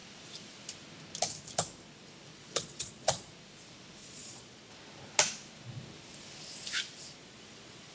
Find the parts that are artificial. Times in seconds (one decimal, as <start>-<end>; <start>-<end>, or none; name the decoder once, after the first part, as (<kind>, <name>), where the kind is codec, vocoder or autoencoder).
2.3-3.3 (vocoder, Vocos); 4.0-4.7; 7.2-7.9